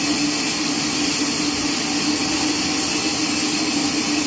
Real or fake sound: real